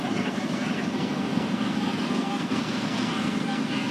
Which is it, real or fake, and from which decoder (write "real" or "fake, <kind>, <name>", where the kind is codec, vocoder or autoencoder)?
fake, codec, SNAC